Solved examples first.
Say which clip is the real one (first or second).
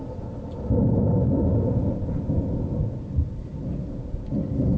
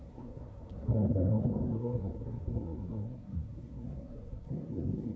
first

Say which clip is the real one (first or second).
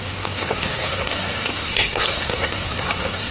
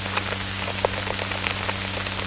second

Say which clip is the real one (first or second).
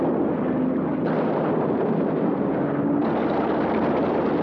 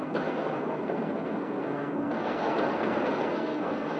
first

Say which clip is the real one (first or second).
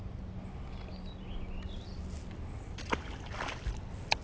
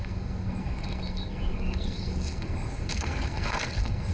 first